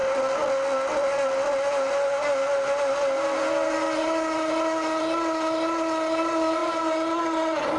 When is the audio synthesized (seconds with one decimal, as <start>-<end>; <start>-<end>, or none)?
none